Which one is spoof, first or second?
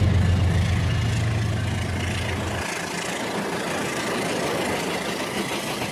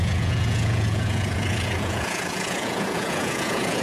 second